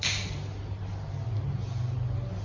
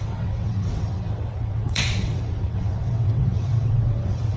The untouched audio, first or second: first